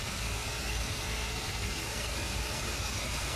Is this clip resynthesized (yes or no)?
yes